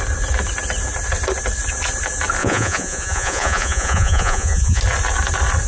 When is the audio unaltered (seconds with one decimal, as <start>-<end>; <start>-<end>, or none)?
0.0-2.4; 4.8-5.7